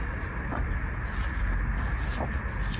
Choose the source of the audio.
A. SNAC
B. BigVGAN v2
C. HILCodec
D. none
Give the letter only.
D